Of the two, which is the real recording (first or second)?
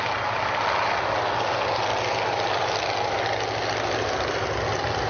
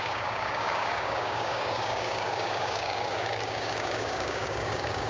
first